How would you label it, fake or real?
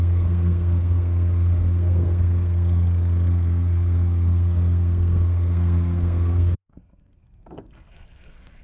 fake